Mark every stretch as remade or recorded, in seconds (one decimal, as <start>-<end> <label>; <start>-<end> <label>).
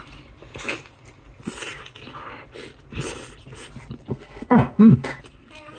0.0-4.1 recorded; 4.1-5.2 remade; 5.2-5.8 recorded